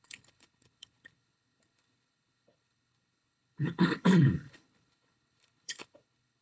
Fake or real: fake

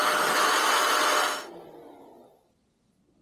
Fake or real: real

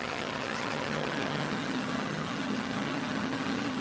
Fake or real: fake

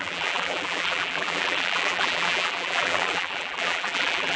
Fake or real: fake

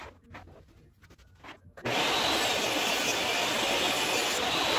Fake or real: real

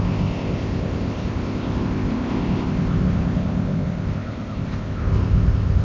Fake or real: fake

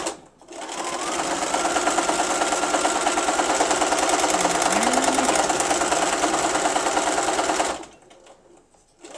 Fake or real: real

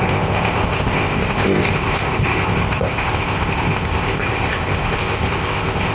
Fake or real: fake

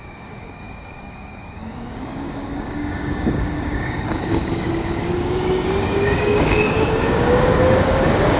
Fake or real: fake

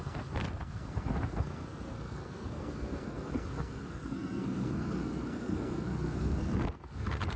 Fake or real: fake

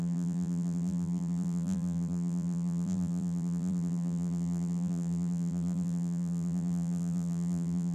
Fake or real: fake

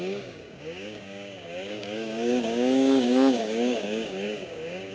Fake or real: fake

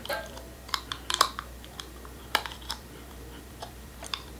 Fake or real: fake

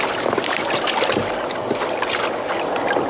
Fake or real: real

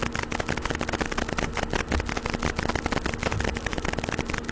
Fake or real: real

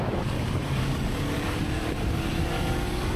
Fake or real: fake